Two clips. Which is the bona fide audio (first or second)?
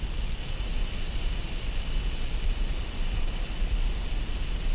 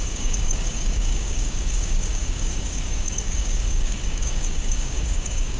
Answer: first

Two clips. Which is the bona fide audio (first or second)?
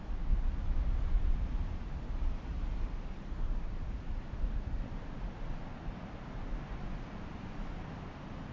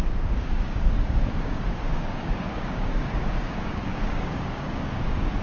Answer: first